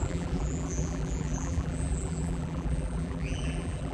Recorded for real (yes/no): no